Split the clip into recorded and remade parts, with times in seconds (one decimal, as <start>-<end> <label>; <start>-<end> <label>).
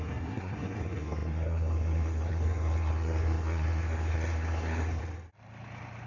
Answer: 0.0-5.0 remade; 5.0-6.1 recorded